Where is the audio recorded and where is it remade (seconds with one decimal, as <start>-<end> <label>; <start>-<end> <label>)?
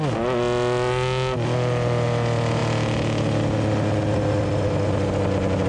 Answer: 0.0-5.7 recorded